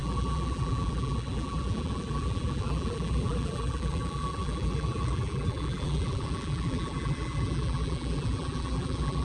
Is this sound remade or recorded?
remade